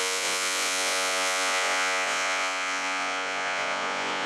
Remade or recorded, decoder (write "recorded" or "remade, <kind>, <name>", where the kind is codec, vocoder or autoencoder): remade, vocoder, Vocos